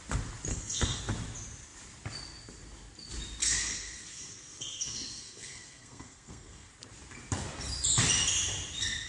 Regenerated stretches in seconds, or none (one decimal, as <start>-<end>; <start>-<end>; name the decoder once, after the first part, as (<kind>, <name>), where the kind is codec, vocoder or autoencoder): 0.5-1.0 (codec, SNAC); 3.4-6.7